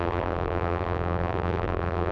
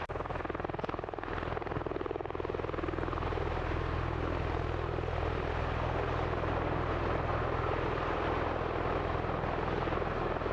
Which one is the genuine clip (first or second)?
second